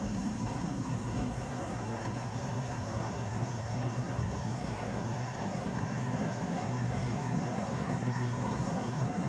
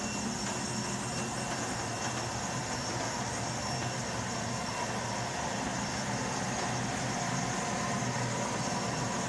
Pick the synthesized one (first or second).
first